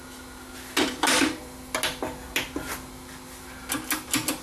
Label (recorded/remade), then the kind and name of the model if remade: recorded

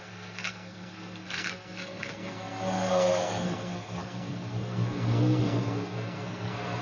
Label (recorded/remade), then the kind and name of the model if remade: remade, codec, SNAC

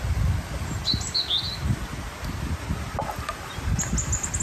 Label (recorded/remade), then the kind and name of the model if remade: recorded